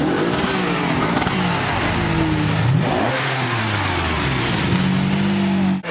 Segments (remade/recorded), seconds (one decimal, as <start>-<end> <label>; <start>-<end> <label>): 0.0-3.1 recorded; 3.1-3.6 remade; 3.6-5.9 recorded